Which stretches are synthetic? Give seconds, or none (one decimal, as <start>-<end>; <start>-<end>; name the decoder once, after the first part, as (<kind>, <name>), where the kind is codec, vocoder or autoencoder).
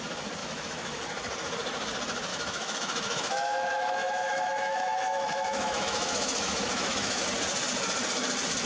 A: 0.4-1.0 (autoencoder, DAC-VAE); 2.3-7.2